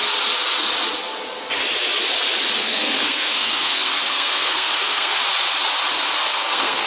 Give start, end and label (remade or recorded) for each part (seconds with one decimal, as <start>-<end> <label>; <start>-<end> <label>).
0.0-2.6 recorded; 2.6-5.2 remade; 5.2-6.3 recorded; 6.3-6.9 remade